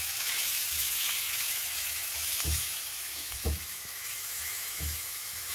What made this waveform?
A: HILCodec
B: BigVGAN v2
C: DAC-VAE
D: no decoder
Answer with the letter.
C